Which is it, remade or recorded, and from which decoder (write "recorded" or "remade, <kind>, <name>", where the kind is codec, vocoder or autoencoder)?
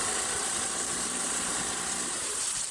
remade, vocoder, BigVGAN v2